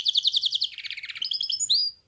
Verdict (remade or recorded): recorded